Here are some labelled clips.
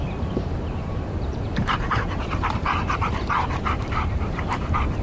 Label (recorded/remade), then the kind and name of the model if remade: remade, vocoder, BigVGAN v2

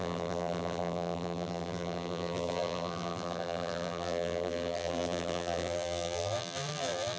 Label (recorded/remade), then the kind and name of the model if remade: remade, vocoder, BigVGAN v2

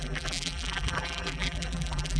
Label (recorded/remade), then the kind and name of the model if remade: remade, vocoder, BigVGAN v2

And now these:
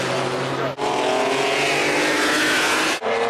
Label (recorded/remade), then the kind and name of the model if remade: recorded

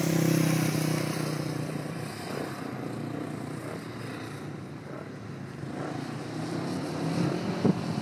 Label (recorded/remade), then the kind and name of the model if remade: recorded